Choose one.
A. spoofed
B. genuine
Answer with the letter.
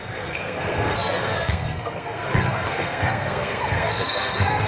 A